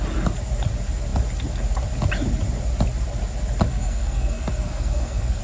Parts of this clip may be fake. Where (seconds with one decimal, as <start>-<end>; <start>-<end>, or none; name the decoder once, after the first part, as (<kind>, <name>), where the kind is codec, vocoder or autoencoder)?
3.7-5.4 (codec, SNAC)